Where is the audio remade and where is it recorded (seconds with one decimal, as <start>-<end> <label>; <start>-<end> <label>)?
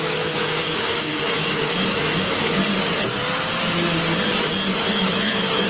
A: 0.0-2.6 remade; 2.6-4.9 recorded; 4.9-5.7 remade